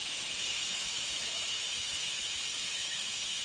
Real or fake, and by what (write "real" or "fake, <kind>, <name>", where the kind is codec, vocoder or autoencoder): fake, autoencoder, DAC-VAE